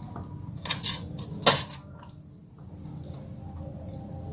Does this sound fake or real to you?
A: real